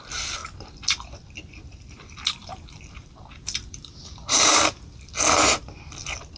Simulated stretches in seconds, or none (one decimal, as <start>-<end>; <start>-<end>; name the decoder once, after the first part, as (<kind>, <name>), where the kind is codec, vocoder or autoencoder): 0.0-6.4 (vocoder, BigVGAN v2)